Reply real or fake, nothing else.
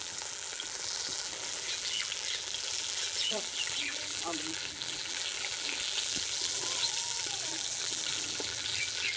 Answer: fake